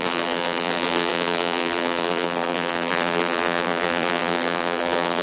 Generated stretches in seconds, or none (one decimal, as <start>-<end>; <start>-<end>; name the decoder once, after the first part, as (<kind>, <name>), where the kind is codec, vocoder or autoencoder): 0.0-5.2 (vocoder, BigVGAN v2)